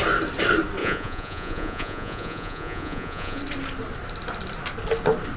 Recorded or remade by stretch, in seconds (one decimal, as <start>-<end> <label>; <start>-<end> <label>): 0.0-0.8 recorded; 0.8-3.4 remade; 3.4-5.4 recorded